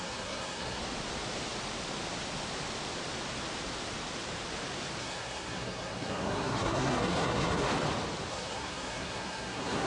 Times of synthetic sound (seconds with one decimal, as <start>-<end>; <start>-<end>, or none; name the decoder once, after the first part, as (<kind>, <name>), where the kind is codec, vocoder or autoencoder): 0.0-0.8 (codec, SNAC); 5.0-7.7; 8.3-9.9